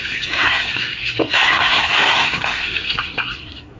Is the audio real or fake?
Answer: fake